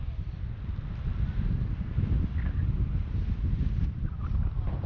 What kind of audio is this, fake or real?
real